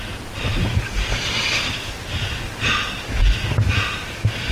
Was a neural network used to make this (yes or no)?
no